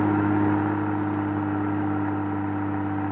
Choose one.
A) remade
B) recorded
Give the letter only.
B